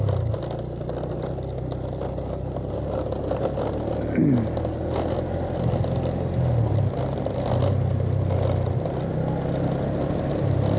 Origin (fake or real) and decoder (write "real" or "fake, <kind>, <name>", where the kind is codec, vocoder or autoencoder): real